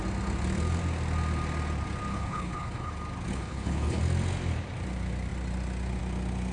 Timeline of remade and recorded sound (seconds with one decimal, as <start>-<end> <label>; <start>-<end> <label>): 0.0-2.1 recorded; 2.1-2.9 remade; 2.9-3.3 recorded; 3.3-4.0 remade; 4.0-6.5 recorded